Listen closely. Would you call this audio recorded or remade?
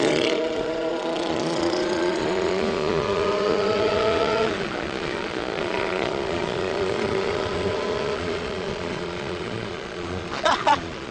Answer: remade